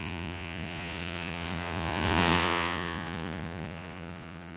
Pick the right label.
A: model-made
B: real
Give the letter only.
A